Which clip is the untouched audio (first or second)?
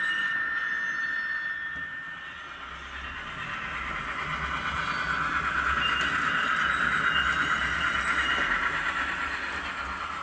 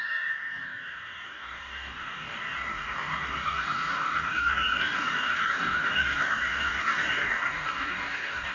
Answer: first